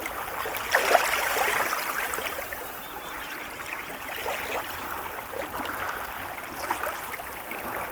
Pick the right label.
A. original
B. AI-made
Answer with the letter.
A